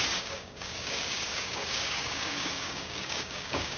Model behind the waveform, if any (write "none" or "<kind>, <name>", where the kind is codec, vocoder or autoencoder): codec, DAC